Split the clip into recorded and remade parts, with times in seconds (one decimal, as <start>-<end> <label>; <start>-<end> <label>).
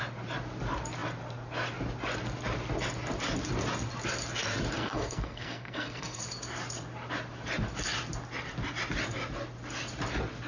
0.0-4.7 recorded; 4.7-6.2 remade; 6.2-10.5 recorded